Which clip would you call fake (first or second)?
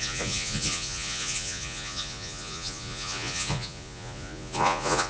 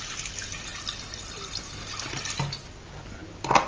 first